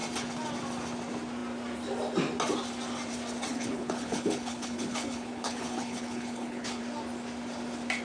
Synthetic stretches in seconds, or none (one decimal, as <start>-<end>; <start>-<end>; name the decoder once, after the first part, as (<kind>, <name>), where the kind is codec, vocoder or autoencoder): 3.5-6.8 (codec, HILCodec)